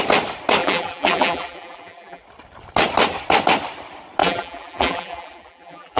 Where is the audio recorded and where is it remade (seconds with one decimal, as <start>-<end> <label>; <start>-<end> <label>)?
0.0-0.6 recorded; 0.6-2.2 remade; 2.2-4.2 recorded; 4.2-6.0 remade